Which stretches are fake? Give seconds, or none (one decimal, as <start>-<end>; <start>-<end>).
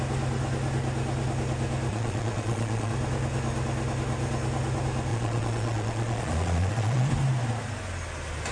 1.9-2.9; 5.1-7.1